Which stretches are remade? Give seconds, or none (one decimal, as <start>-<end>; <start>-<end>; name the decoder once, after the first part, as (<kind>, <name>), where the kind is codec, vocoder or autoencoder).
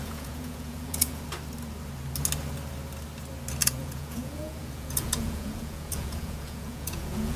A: 0.0-1.2 (vocoder, Vocos); 3.6-7.4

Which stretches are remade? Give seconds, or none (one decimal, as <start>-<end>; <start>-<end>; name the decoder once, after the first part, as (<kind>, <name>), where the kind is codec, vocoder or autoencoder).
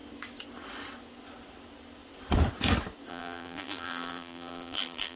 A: 3.1-5.2 (vocoder, BigVGAN v2)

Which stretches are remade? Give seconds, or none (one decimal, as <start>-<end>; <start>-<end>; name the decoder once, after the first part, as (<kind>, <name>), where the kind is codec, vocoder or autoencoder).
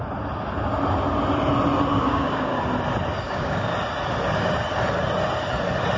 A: 1.9-2.5 (codec, DAC); 3.2-3.7